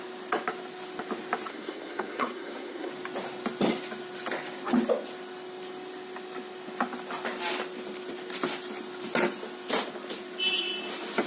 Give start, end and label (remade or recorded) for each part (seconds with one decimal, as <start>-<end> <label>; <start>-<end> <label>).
0.0-1.5 recorded; 1.5-2.9 remade; 2.9-11.3 recorded